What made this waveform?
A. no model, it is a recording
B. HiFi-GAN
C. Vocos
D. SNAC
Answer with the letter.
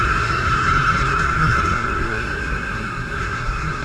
D